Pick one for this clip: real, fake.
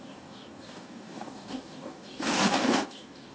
fake